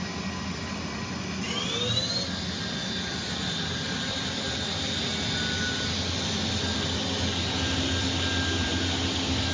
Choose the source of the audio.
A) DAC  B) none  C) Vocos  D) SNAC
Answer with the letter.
B